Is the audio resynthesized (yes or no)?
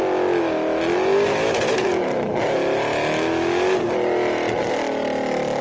no